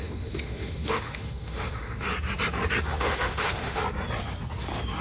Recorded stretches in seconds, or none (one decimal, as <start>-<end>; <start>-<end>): 2.1-2.8; 3.8-5.0